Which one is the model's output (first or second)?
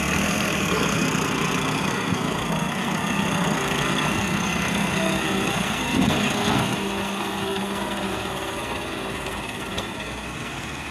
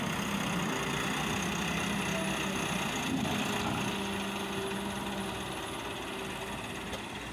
first